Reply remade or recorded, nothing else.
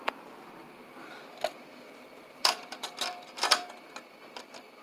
remade